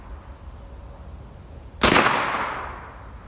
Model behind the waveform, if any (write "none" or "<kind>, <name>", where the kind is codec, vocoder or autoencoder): none